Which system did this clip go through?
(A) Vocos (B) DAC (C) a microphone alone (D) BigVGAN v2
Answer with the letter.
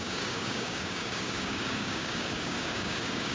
B